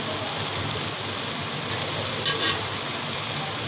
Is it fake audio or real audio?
real